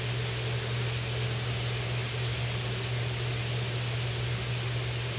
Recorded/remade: recorded